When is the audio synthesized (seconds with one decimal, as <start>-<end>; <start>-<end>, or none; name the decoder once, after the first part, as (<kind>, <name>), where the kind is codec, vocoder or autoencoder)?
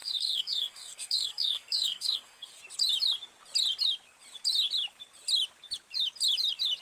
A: 0.0-2.6 (codec, SNAC)